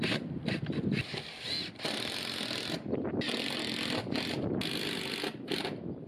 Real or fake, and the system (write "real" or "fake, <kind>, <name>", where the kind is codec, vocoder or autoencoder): real